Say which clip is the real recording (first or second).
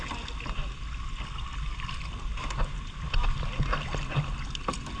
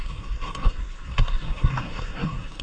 first